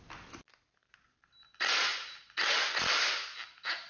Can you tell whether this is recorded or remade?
recorded